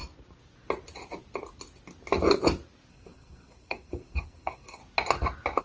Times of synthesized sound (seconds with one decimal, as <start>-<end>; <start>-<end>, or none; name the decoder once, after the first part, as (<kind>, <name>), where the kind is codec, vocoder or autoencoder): 2.9-4.8 (codec, SNAC)